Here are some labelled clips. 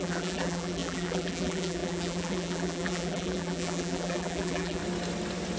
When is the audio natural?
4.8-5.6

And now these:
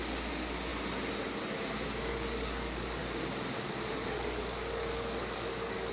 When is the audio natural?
0.7-2.0; 3.0-3.9

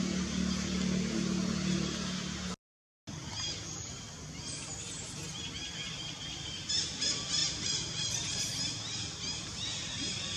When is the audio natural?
0.0-7.4; 8.5-10.4

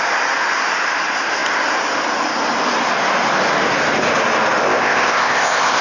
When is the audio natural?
0.0-4.6

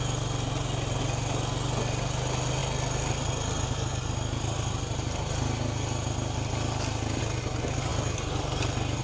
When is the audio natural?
0.0-9.0